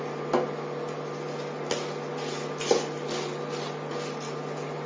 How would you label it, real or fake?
real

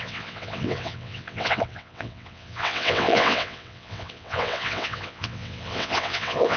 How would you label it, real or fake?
fake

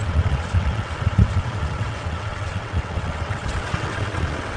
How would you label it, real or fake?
fake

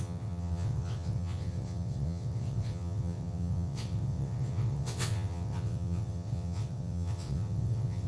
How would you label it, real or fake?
fake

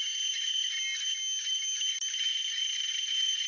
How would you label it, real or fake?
real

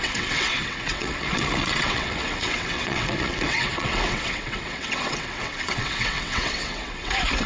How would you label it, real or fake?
fake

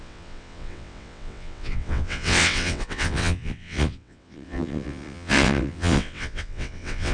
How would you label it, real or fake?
fake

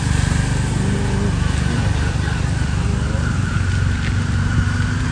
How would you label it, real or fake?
real